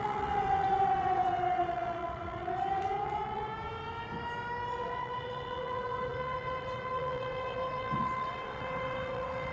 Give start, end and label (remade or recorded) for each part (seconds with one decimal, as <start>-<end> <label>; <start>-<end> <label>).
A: 0.0-3.5 remade; 3.5-4.7 recorded; 4.7-9.5 remade